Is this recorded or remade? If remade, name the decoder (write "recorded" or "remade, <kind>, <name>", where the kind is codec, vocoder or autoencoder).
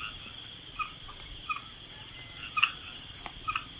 recorded